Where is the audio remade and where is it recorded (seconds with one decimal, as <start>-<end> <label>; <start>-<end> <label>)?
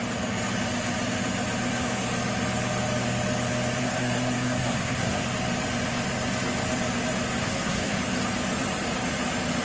0.0-3.8 recorded; 3.8-5.2 remade; 5.2-7.4 recorded; 7.4-8.0 remade; 8.0-9.6 recorded